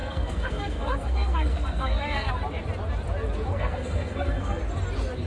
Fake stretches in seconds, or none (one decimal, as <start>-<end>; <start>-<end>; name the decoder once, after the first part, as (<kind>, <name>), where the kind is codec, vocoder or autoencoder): 0.0-2.3 (codec, SNAC); 3.5-4.6